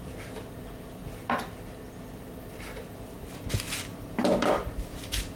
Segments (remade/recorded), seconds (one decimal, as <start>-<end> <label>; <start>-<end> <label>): 0.0-1.0 remade; 1.0-2.0 recorded; 2.0-5.4 remade